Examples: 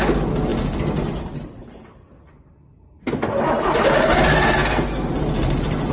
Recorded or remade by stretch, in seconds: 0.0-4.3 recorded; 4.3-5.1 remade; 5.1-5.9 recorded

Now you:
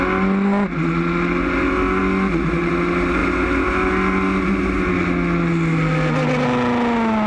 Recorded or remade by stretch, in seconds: 0.0-7.3 recorded